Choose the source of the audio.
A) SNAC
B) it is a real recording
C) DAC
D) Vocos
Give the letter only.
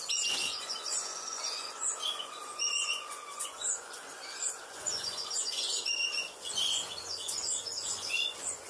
D